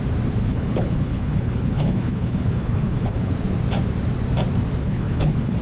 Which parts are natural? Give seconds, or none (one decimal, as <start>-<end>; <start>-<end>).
0.0-0.4; 3.3-4.8